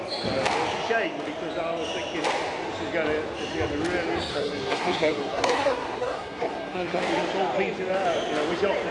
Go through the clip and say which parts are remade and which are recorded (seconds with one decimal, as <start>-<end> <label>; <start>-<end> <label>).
0.0-4.3 recorded; 4.3-7.0 remade; 7.0-8.9 recorded